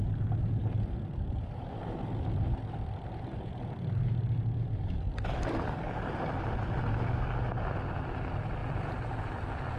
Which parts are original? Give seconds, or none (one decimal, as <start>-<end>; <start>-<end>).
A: 0.0-0.6; 5.8-8.6; 9.2-9.8